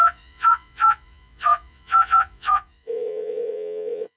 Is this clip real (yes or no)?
no